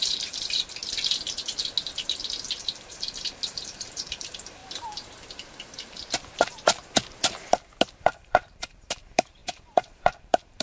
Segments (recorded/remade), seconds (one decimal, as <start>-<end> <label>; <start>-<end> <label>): 0.0-0.8 remade; 0.8-2.6 recorded; 2.6-4.6 remade; 4.6-8.0 recorded; 8.0-10.6 remade